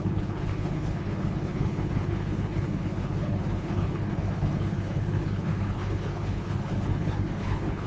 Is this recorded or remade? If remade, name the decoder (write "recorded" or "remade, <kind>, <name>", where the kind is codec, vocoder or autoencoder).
remade, codec, HILCodec